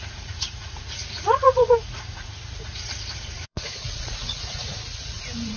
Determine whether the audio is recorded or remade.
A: remade